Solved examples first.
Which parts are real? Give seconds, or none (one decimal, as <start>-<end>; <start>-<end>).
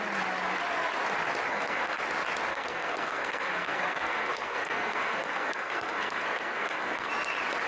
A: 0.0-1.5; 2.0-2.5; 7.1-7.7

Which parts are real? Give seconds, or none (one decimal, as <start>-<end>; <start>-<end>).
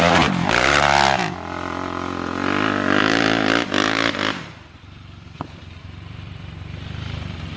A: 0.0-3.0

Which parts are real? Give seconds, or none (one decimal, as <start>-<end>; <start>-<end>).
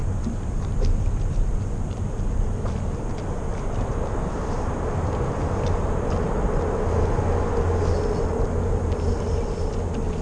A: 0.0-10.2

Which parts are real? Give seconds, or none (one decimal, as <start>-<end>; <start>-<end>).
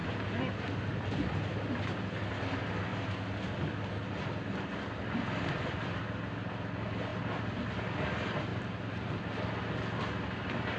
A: 0.0-8.5; 9.2-10.8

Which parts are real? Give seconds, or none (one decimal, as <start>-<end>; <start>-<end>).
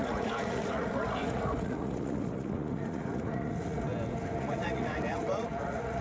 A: 3.9-4.4